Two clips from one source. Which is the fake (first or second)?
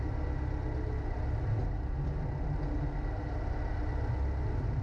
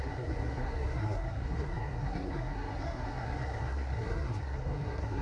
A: second